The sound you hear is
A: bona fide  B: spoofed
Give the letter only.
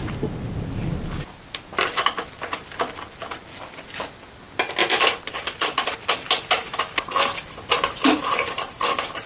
A